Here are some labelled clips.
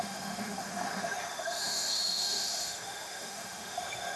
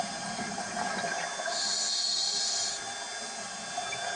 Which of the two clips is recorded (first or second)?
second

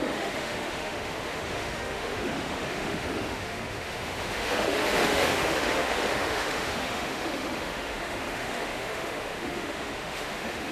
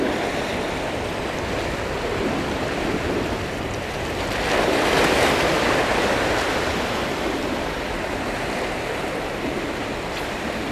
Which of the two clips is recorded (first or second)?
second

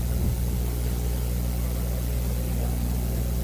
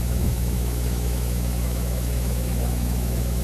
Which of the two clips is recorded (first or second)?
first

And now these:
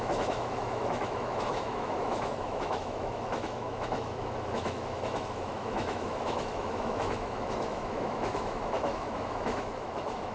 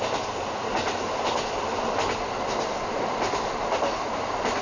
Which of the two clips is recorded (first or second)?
second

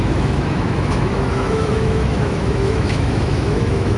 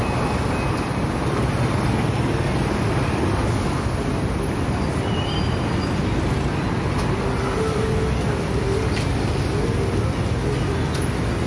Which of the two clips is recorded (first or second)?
second